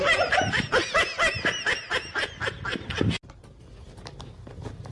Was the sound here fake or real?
real